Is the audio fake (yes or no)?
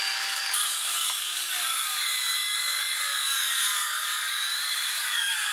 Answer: yes